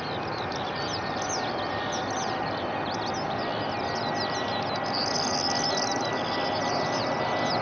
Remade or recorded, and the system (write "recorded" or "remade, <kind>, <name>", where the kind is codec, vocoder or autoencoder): recorded